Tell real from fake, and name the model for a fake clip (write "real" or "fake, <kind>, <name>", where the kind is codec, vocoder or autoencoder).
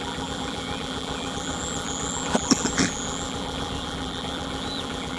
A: fake, vocoder, BigVGAN v2